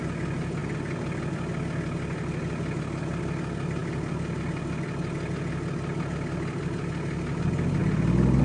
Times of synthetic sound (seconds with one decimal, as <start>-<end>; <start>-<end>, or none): none